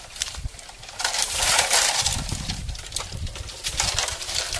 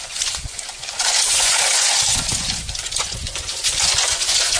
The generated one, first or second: second